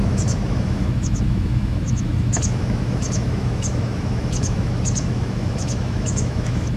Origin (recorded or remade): remade